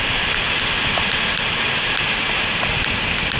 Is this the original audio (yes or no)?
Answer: yes